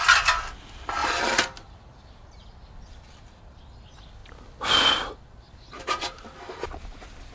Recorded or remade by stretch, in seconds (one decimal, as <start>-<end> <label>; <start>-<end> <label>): 0.0-1.0 recorded; 1.0-2.1 remade; 2.1-7.3 recorded